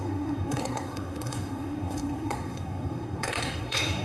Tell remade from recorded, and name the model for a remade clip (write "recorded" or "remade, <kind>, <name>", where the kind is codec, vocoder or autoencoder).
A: remade, codec, SNAC